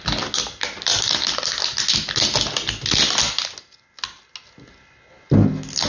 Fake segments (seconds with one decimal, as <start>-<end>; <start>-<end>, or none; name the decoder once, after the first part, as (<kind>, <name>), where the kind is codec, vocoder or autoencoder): none